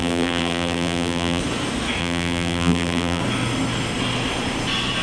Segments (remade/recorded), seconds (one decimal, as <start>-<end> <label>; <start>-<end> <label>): 0.0-1.4 remade; 1.4-2.0 recorded; 2.0-3.2 remade; 3.2-5.0 recorded